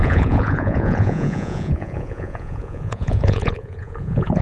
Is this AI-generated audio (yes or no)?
yes